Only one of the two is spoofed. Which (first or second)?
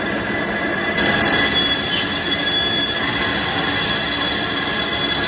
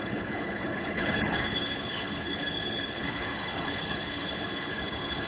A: second